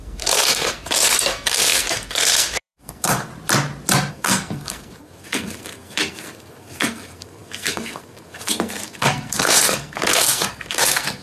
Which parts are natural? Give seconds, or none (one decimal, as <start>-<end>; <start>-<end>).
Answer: 3.3-4.1